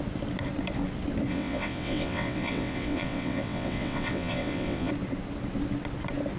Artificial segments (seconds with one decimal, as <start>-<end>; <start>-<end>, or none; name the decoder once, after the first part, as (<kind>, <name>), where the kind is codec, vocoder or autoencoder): 1.3-4.9 (vocoder, WaveNeXt)